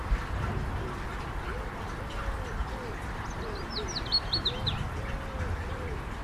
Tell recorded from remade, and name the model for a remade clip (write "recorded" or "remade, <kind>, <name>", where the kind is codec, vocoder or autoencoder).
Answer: recorded